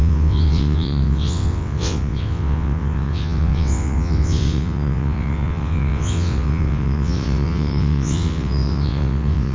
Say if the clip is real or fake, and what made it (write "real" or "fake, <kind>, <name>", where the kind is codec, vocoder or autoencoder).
fake, vocoder, WaveNeXt